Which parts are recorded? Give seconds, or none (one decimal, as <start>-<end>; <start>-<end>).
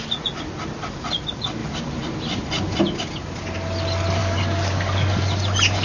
0.0-4.2; 5.2-5.8